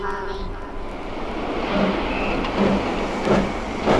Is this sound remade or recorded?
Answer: recorded